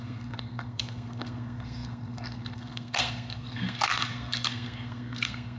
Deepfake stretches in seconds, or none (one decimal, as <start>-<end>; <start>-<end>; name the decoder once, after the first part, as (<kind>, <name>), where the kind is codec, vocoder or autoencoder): 0.0-5.6 (codec, SNAC)